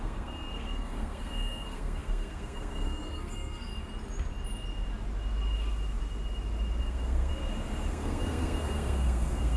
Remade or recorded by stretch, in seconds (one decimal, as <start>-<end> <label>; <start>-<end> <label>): 0.0-3.7 remade; 3.7-6.8 recorded; 6.8-7.3 remade; 7.3-7.9 recorded; 7.9-9.6 remade